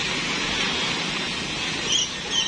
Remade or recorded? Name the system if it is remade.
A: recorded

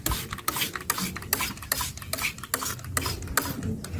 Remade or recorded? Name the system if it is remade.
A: recorded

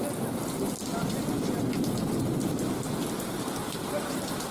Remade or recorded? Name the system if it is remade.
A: recorded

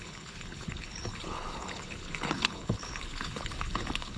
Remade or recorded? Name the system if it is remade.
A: remade, codec, HILCodec